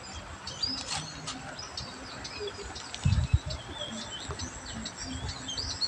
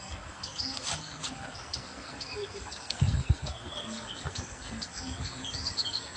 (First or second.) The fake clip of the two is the second